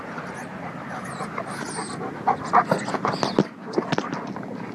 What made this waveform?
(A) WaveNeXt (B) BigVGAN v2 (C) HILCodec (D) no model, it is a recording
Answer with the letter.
D